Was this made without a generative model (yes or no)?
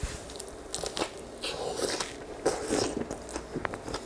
yes